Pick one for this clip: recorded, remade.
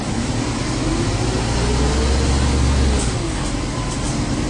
recorded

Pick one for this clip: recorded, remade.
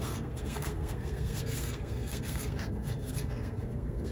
remade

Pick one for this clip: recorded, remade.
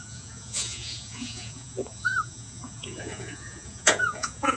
remade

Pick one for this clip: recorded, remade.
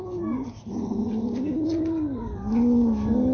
recorded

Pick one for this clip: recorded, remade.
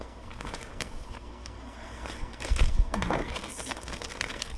remade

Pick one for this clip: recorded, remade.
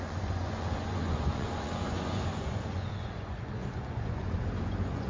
remade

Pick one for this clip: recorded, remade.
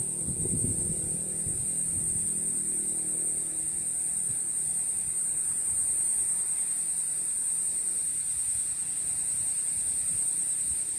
recorded